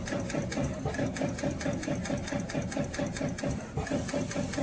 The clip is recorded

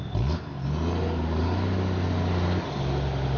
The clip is recorded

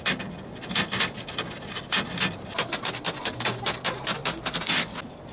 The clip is recorded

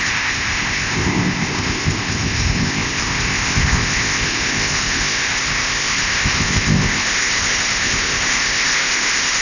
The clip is remade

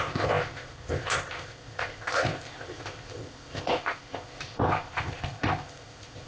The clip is remade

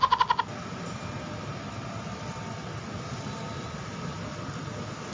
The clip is recorded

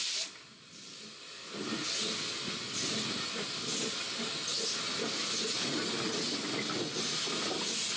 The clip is recorded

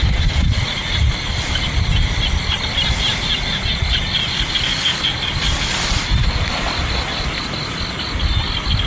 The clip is recorded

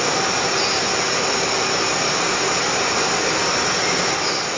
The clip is recorded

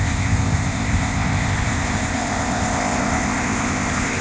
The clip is remade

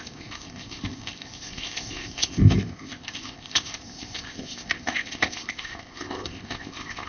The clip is remade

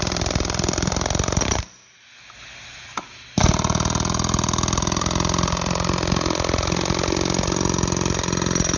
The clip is recorded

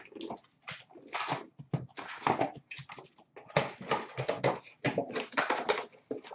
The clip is recorded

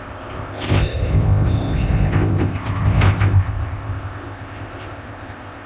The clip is remade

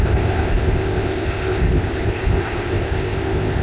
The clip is remade